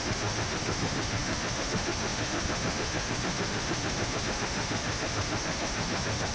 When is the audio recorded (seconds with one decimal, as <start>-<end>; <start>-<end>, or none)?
none